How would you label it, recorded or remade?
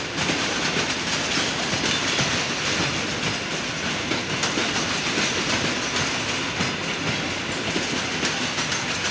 recorded